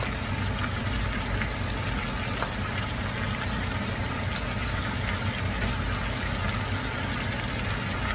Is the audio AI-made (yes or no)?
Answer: no